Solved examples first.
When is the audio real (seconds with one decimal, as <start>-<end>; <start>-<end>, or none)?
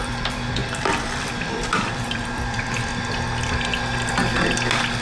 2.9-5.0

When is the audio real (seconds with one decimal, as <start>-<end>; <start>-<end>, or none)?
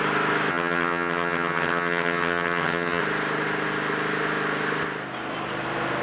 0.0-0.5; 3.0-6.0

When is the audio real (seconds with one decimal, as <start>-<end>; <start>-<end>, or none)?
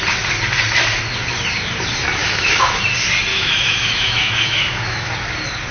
0.0-2.2; 2.8-3.3; 5.1-5.7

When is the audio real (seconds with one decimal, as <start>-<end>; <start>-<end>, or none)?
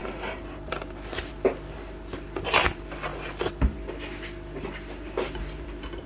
0.0-6.1